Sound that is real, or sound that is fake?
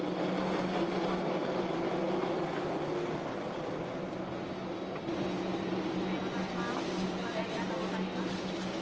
real